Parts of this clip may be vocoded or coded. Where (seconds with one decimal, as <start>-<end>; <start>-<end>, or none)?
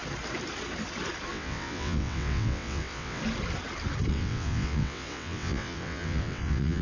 1.3-3.2; 4.1-6.8